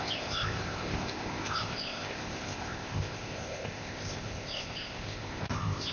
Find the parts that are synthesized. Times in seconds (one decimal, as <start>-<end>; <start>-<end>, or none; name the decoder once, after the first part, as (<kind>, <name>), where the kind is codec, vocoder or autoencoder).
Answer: 0.0-5.9 (codec, ZipCodec)